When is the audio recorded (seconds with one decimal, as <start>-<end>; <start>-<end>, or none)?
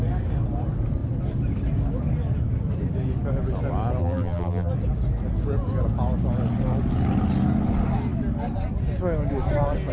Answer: 0.0-4.0; 4.7-9.9